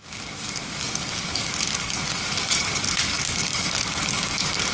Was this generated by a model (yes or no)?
yes